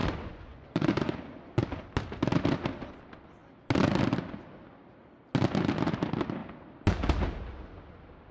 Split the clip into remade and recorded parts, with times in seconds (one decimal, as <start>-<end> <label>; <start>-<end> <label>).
0.0-1.6 remade; 1.6-8.3 recorded